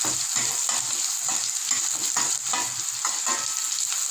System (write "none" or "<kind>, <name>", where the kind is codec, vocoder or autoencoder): none